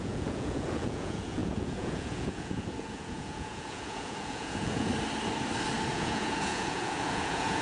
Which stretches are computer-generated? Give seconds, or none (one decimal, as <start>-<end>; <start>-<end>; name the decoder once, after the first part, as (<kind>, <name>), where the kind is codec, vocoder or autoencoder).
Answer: 0.0-4.9 (vocoder, Vocos); 5.9-7.6

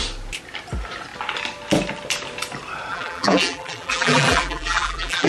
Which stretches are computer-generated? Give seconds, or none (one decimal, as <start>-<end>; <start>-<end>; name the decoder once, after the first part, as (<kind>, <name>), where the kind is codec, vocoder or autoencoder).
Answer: 2.9-5.3 (vocoder, BigVGAN v2)

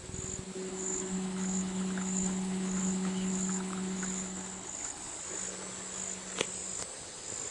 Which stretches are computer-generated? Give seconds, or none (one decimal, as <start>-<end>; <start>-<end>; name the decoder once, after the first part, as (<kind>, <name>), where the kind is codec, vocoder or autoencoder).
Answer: 0.7-5.2 (codec, HILCodec)

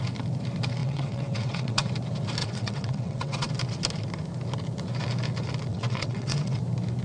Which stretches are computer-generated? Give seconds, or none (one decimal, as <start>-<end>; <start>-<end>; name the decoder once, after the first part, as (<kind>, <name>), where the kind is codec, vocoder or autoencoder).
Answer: 0.8-1.9 (vocoder, WaveNeXt); 2.4-3.5; 5.7-6.6

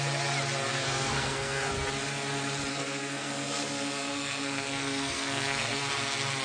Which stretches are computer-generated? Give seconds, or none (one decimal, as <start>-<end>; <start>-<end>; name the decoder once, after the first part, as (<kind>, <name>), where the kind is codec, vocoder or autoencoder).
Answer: 0.7-1.7 (codec, SNAC); 2.7-5.9

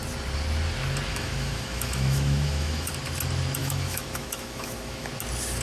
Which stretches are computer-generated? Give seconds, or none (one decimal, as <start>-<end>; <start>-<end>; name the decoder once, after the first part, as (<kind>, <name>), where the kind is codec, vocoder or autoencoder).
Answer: 1.1-2.9 (autoencoder, DAC-VAE); 3.6-5.1